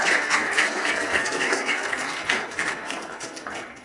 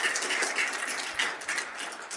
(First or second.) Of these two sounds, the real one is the second